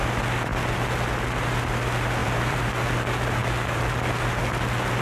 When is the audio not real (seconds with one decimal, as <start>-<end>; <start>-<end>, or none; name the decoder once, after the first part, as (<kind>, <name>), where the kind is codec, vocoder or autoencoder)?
2.2-2.7 (vocoder, BigVGAN v2)